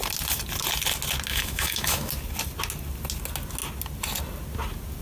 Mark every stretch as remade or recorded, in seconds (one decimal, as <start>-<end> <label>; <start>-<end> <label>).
0.0-1.3 recorded; 1.3-2.1 remade; 2.1-5.0 recorded